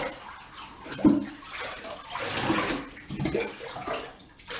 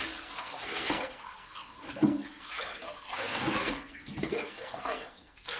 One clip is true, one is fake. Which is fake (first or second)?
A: second